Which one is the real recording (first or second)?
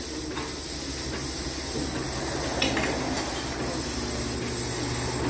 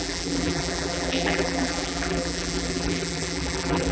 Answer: first